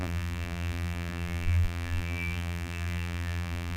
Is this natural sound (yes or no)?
no